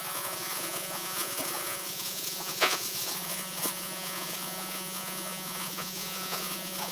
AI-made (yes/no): yes